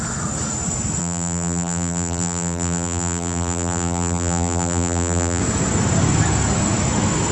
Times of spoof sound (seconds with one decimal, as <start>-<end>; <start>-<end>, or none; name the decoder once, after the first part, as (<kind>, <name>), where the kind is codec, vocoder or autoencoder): 1.0-5.4 (vocoder, BigVGAN v2)